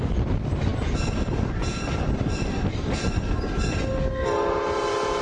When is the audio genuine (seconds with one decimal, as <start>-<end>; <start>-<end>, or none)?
0.0-5.2